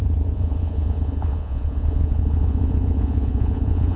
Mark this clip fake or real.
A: fake